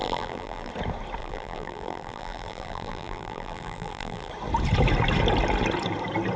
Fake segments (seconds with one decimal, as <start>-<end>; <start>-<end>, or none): 0.0-0.7; 1.2-4.3